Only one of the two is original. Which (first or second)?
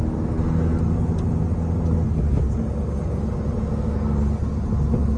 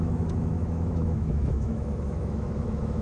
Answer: first